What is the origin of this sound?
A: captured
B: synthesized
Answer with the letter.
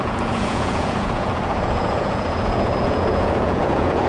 B